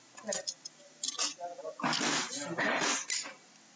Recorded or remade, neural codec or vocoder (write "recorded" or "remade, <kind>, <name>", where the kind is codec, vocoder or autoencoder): recorded